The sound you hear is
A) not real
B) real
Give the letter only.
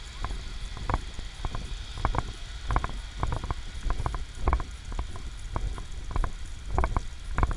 B